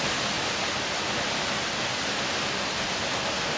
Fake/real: real